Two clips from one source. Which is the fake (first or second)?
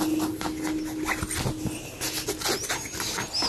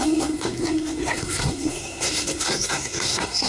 second